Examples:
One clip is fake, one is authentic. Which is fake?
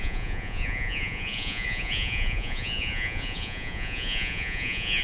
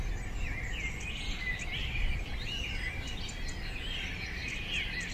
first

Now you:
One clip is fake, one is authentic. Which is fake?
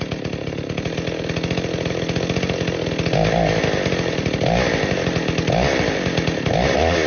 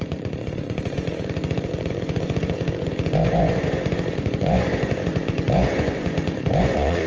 second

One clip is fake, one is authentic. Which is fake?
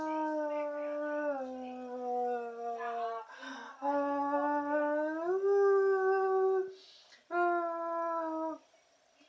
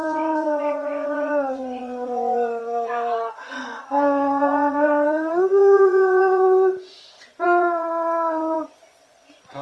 second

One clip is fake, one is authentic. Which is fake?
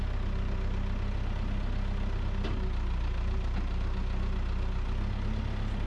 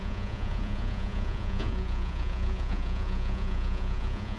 second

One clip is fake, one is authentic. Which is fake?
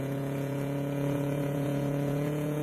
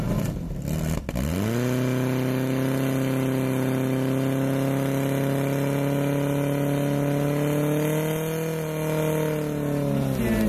first